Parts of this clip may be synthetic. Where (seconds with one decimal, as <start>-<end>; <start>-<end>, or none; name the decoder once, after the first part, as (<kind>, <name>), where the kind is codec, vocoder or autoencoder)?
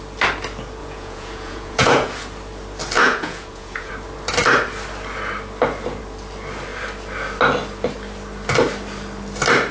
0.8-2.2 (vocoder, Vocos); 3.0-3.9